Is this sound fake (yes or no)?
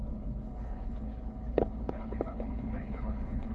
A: yes